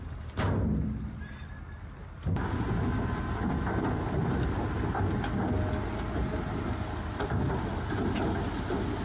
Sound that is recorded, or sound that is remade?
recorded